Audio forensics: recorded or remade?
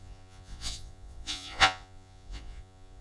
remade